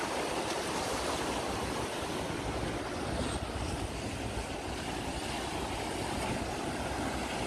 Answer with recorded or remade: recorded